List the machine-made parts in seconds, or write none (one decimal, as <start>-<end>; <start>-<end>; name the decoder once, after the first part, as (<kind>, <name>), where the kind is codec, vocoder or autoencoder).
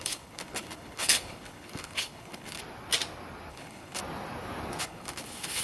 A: 0.0-2.6 (codec, HILCodec); 3.5-4.0; 4.8-5.6